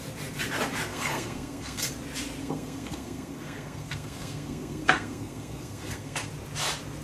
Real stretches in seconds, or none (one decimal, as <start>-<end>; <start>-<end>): 0.0-0.9; 1.9-2.4; 6.3-7.0